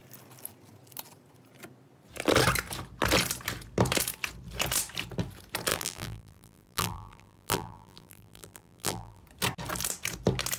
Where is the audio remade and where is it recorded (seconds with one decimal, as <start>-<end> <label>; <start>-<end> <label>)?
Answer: 0.0-5.7 recorded; 5.7-9.2 remade; 9.2-10.6 recorded